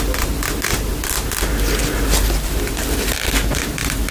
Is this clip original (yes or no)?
yes